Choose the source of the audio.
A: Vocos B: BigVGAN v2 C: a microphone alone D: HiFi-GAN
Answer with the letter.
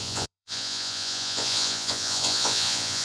A